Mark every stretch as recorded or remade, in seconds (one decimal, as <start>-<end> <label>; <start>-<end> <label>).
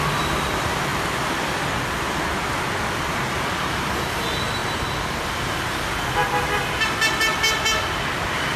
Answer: 0.0-8.6 recorded